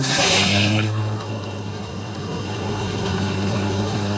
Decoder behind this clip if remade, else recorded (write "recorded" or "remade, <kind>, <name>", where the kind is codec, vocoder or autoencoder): remade, codec, SNAC